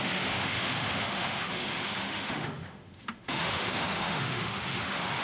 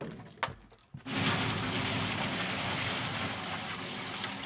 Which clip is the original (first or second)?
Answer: second